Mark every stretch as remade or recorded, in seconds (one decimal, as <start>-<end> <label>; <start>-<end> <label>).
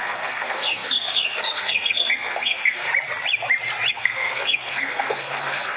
0.0-2.9 remade; 2.9-3.9 recorded; 3.9-5.8 remade